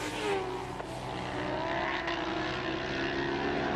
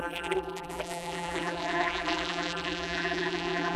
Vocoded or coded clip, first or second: second